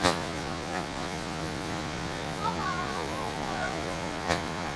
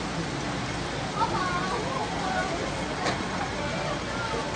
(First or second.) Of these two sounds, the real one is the second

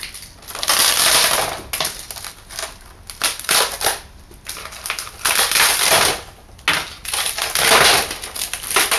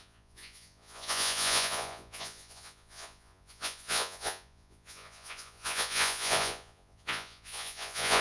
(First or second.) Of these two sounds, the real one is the first